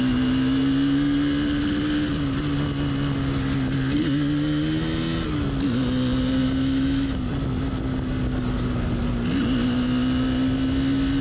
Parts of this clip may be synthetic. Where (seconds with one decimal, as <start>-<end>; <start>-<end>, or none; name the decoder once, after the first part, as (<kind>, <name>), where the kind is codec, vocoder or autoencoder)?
6.4-7.3 (autoencoder, DAC-VAE)